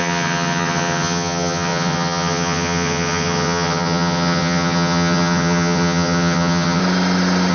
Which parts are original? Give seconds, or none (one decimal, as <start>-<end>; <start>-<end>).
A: 6.8-7.5